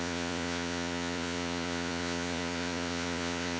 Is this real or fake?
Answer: fake